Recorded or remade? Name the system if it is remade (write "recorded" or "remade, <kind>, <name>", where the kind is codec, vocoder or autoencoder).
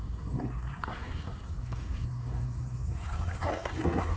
remade, codec, SNAC